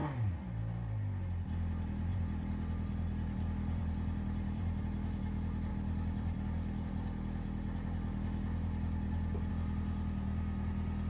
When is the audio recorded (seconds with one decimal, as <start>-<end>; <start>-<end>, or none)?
0.0-2.1; 4.8-5.7; 9.5-11.1